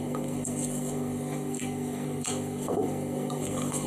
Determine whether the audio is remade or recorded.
remade